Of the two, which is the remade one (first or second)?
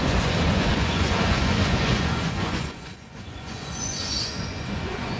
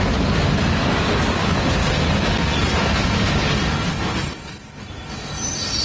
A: first